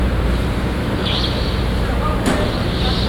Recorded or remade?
remade